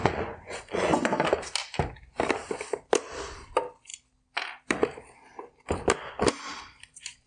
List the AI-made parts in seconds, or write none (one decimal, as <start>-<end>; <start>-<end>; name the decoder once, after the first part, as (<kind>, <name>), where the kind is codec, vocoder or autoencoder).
0.0-1.1 (vocoder, Vocos)